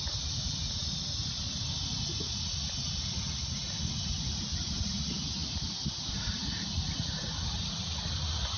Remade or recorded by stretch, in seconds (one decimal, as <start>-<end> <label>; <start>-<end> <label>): 0.0-8.6 recorded